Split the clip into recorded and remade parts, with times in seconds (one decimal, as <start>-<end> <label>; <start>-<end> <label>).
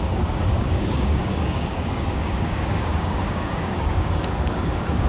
0.0-5.1 remade